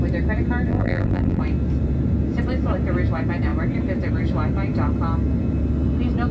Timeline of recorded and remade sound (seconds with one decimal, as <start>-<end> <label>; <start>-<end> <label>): 0.0-0.7 recorded; 0.7-1.4 remade; 1.4-6.3 recorded

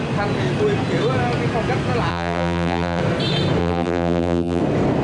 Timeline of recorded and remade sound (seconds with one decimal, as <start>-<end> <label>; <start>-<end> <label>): 0.0-2.1 recorded; 2.1-3.0 remade; 3.0-3.6 recorded; 3.6-4.6 remade; 4.6-5.0 recorded

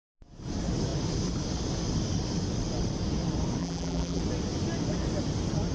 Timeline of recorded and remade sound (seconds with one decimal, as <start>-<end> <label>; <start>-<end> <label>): 0.0-3.6 recorded; 3.6-4.2 remade; 4.2-5.7 recorded

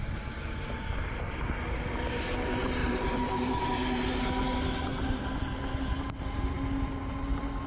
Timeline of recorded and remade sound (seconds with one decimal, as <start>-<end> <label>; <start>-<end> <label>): 0.0-2.8 recorded; 2.8-4.1 remade; 4.1-7.7 recorded

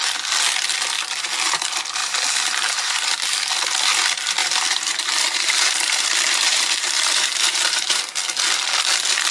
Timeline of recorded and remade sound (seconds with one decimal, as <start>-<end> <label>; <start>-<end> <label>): 0.0-4.4 recorded; 4.4-8.0 remade; 8.0-9.3 recorded

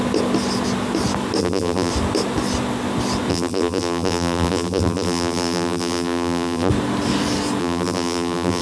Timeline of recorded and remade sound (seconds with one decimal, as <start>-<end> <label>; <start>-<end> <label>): 0.0-1.4 recorded; 1.4-1.9 remade; 1.9-3.3 recorded; 3.3-6.7 remade; 6.7-7.6 recorded; 7.6-8.6 remade

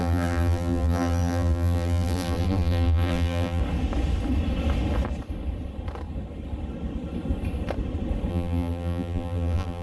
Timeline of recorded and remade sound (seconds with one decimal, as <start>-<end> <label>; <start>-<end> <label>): 0.0-3.6 remade; 3.6-8.3 recorded; 8.3-9.8 remade